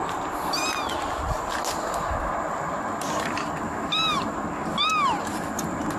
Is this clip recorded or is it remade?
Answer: recorded